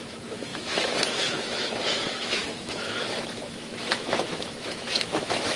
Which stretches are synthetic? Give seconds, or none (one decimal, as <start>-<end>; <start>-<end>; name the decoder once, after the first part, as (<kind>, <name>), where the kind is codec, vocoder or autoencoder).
0.0-5.6 (autoencoder, DAC-VAE)